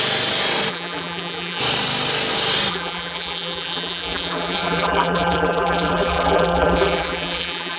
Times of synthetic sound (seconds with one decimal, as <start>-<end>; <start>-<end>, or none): 0.7-1.6; 2.7-7.8